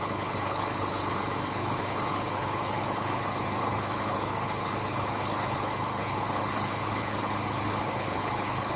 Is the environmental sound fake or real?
fake